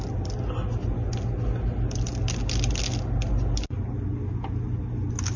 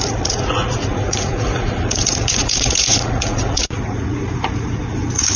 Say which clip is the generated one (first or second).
second